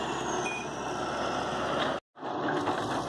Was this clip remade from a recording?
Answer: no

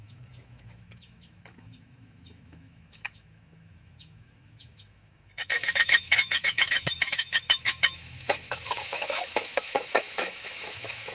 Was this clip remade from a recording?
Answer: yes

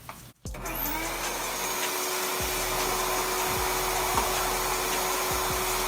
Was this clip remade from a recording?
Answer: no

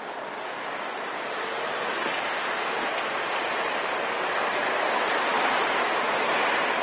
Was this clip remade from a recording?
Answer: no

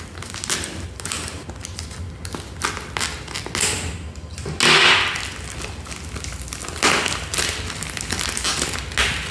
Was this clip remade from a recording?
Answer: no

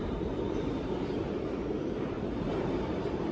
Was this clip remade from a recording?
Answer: yes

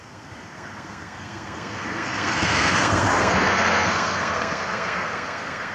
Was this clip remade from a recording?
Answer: yes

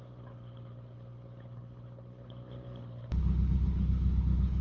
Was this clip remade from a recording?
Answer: yes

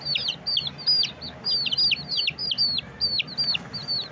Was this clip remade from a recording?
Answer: no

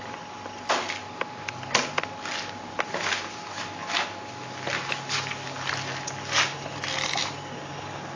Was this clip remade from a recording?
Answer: no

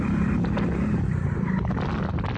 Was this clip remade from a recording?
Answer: no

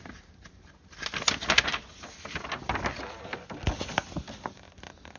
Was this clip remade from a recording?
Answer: no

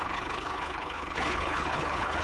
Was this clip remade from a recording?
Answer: yes